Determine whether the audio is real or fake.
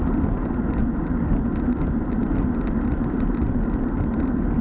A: real